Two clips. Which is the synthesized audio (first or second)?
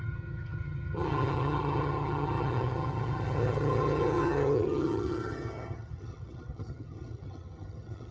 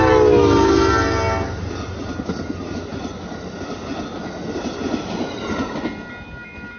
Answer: first